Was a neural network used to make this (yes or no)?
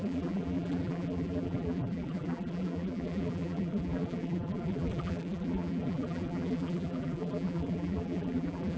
yes